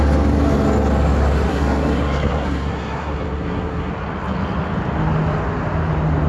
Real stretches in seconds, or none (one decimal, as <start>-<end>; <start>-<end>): 0.0-1.5; 3.9-6.3